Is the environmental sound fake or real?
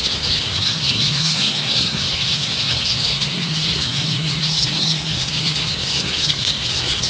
fake